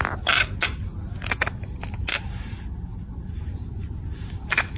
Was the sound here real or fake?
real